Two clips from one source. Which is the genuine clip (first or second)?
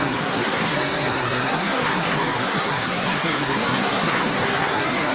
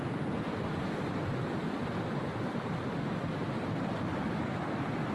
second